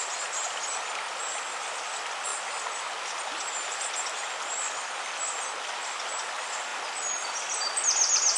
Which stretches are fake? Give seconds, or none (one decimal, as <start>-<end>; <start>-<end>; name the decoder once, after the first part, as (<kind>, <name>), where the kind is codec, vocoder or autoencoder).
none